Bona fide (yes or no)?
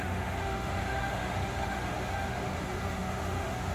no